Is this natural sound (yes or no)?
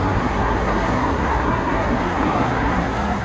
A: no